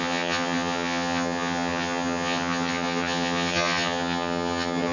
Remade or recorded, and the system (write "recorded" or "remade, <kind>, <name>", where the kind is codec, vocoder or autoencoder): remade, vocoder, HiFi-GAN